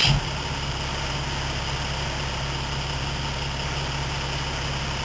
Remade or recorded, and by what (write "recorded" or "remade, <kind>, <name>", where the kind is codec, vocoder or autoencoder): recorded